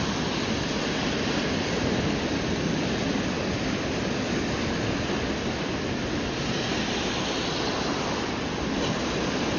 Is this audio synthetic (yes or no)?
no